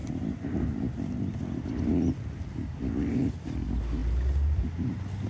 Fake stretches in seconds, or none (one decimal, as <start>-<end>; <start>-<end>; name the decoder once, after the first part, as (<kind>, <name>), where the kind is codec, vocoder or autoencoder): 0.0-2.1 (vocoder, BigVGAN v2)